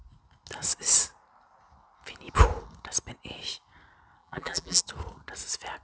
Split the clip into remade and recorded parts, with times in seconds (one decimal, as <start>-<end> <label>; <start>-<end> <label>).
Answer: 0.0-4.2 recorded; 4.2-4.8 remade; 4.8-5.8 recorded